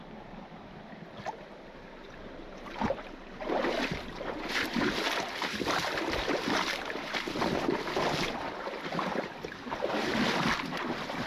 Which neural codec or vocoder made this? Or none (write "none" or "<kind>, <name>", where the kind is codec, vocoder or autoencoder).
none